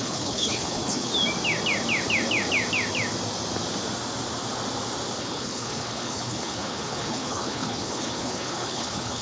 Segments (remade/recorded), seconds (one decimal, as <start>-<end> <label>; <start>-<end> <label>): 0.0-1.1 remade; 1.1-5.2 recorded; 5.2-9.2 remade